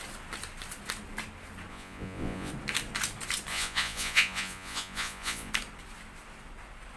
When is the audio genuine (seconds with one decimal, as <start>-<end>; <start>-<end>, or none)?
0.0-1.7; 2.5-3.5; 5.5-7.0